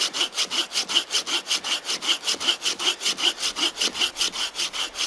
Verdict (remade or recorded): recorded